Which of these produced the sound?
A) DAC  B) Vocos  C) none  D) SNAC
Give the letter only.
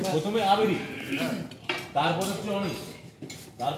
C